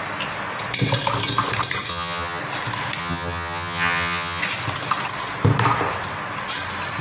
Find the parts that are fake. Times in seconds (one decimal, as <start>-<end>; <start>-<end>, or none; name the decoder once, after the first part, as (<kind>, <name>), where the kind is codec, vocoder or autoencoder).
1.9-2.4 (vocoder, HiFi-GAN); 3.0-4.4